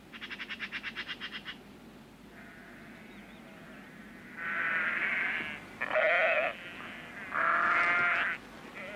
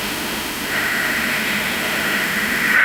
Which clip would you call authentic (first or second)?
first